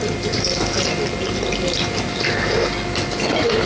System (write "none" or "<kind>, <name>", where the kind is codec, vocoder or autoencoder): none